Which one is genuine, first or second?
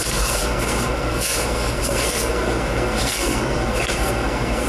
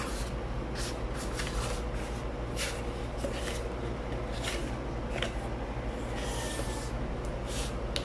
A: second